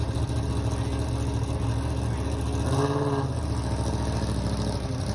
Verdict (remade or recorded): recorded